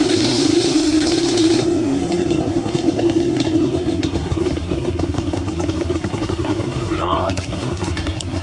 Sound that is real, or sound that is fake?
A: fake